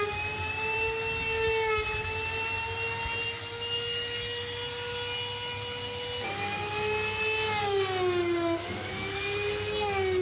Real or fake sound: real